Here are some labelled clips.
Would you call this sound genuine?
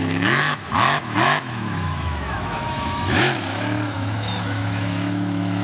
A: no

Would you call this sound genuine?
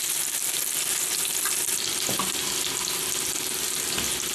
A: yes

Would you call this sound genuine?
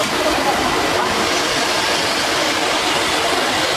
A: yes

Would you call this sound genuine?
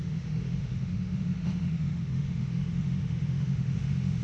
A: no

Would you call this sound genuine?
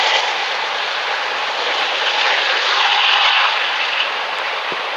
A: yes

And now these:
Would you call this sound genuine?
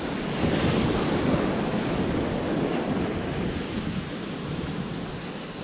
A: yes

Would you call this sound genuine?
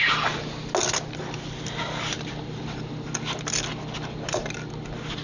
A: yes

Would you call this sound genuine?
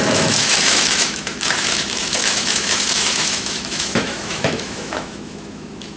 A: no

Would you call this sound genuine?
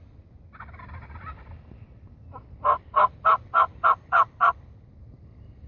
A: yes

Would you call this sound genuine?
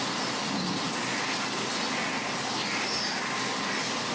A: yes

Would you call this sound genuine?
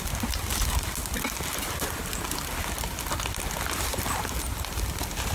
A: yes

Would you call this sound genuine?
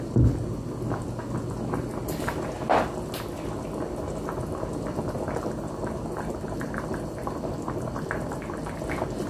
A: yes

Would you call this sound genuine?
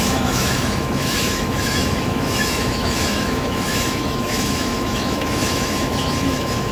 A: no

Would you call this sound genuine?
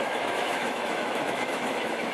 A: no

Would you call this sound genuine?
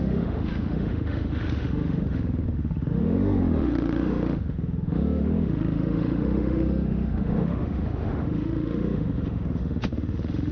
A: no